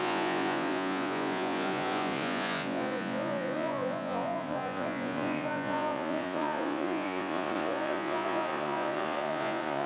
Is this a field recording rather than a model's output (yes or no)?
no